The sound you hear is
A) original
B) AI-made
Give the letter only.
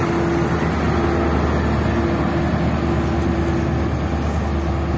A